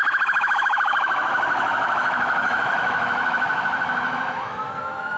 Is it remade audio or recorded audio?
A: remade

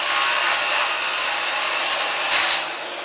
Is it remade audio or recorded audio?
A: recorded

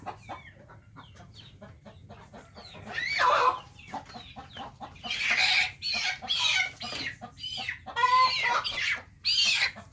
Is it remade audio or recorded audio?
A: recorded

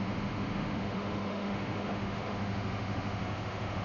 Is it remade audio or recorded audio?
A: remade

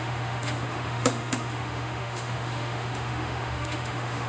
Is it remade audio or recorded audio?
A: remade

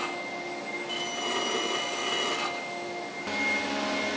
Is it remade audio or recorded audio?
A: recorded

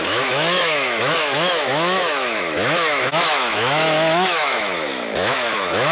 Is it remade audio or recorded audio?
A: remade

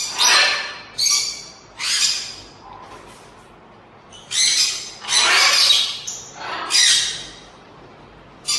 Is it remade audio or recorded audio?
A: recorded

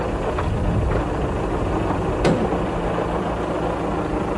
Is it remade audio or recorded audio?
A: recorded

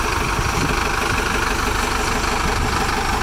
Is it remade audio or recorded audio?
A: recorded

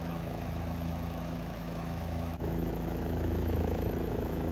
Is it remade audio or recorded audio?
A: remade